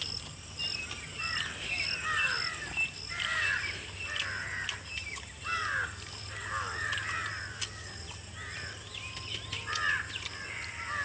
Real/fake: real